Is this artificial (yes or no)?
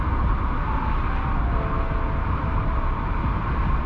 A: no